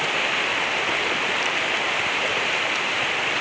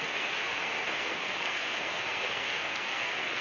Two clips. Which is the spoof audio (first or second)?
second